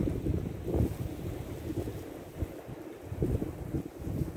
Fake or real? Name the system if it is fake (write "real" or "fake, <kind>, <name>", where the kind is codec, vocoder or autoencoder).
real